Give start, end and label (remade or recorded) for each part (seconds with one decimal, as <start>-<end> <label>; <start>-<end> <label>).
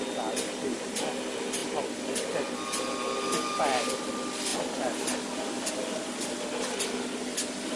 0.0-7.8 recorded